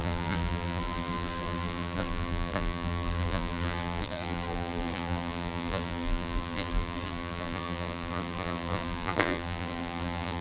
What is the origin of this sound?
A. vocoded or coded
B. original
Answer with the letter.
A